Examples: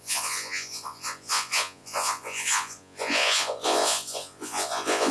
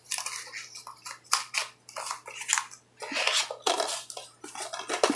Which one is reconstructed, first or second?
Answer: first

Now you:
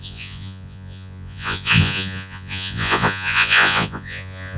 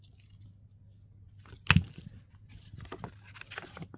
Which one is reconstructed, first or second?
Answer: first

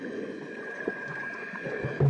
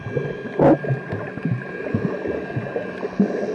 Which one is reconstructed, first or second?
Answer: first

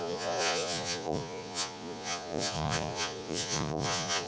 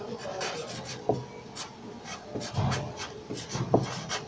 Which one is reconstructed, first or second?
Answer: first